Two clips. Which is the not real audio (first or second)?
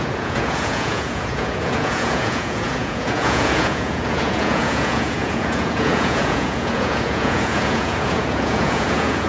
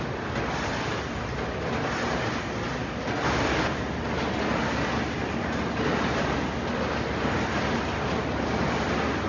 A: first